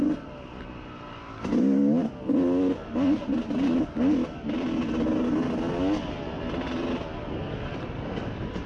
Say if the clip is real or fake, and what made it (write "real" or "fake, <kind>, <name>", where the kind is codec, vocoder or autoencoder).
real